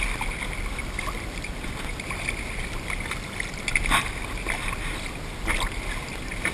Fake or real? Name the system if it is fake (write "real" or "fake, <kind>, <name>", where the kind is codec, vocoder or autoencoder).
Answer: real